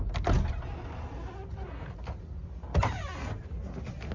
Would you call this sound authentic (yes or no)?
yes